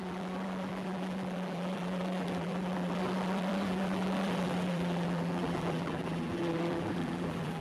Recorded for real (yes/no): no